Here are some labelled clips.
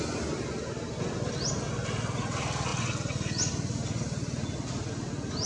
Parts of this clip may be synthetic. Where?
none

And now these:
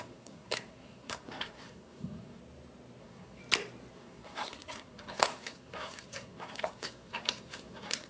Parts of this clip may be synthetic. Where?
0.0-2.4 (codec, SNAC); 3.0-3.4; 3.9-8.1

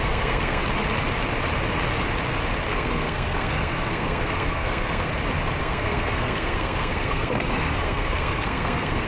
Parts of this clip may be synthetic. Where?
0.0-0.6 (codec, SNAC); 2.7-5.1; 5.6-9.1

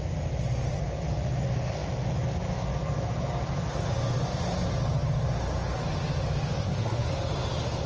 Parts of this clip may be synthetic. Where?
6.6-7.1 (codec, SNAC)

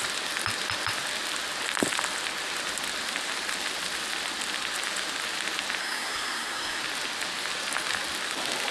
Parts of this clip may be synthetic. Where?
5.8-6.8 (codec, SNAC)

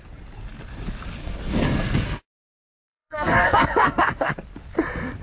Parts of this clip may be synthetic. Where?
1.2-4.3 (codec, SNAC)

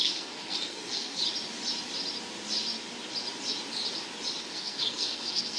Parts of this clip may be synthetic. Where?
0.0-1.2 (codec, SNAC); 4.4-5.6

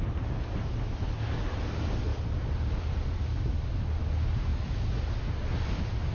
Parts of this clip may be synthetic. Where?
none